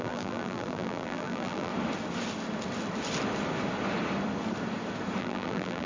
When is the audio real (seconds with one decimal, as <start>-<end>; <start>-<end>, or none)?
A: 1.7-5.2